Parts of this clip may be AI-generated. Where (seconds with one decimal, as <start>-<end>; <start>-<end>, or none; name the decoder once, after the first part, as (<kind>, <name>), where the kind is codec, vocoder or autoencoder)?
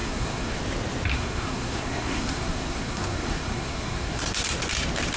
0.0-0.6 (codec, SNAC); 1.1-4.2